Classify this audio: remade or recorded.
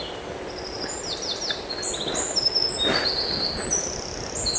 recorded